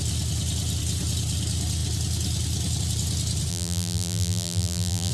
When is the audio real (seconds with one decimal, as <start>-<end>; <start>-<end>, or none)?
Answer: 0.0-3.5